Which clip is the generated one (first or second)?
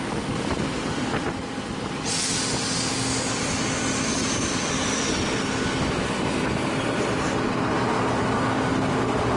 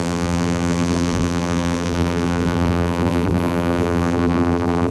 second